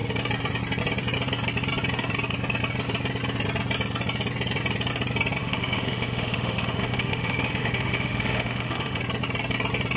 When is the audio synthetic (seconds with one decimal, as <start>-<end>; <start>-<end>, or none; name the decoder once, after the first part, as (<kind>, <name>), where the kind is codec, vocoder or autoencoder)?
5.4-9.0 (autoencoder, DAC-VAE)